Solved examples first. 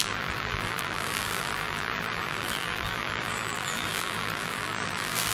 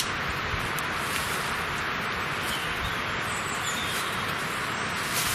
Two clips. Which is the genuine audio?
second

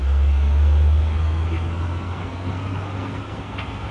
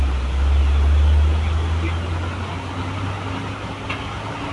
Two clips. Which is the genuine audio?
second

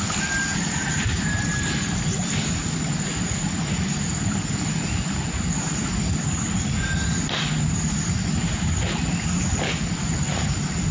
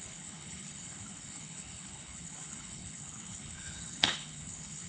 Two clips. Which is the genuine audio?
first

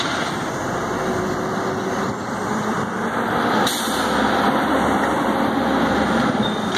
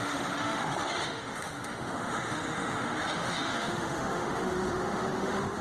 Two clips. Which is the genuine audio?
first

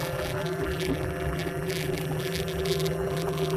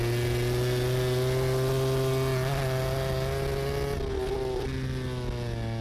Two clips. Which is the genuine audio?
second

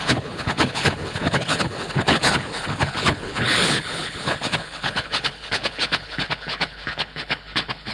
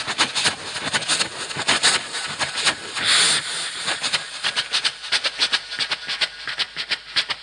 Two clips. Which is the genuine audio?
second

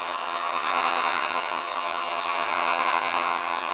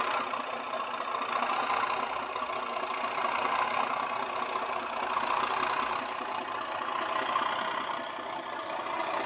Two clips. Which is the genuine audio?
second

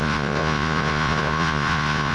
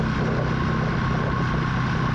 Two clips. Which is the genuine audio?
second